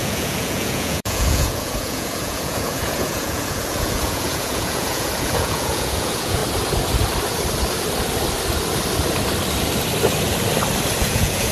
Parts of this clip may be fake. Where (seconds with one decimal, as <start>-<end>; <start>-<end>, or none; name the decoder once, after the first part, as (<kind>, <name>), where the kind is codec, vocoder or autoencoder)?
0.0-6.4 (vocoder, Vocos); 11.0-11.5